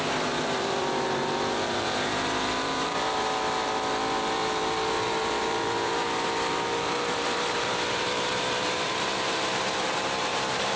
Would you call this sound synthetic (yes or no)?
yes